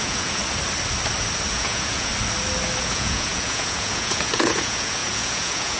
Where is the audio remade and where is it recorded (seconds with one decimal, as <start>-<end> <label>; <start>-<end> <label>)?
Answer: 0.0-0.4 remade; 0.4-1.5 recorded; 1.5-2.1 remade; 2.1-2.8 recorded; 2.8-5.8 remade